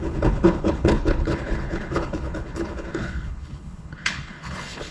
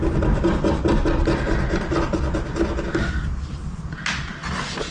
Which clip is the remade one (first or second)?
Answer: first